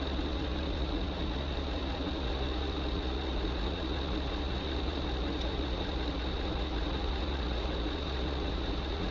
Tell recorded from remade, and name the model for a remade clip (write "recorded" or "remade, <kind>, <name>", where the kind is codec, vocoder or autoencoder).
remade, vocoder, Vocos